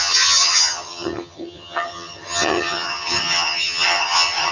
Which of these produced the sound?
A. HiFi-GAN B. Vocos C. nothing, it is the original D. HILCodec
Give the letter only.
A